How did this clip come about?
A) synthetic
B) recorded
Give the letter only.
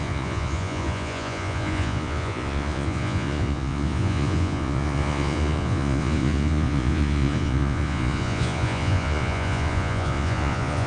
A